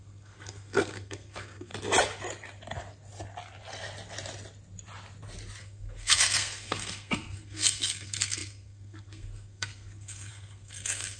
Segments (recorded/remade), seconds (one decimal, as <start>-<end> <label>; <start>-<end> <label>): 0.0-1.7 remade; 1.7-5.6 recorded; 5.6-11.2 remade